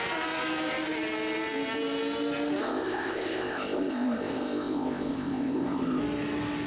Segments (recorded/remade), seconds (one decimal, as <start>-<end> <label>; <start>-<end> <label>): 0.0-2.6 recorded; 2.6-6.0 remade; 6.0-6.7 recorded